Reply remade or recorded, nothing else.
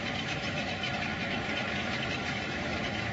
remade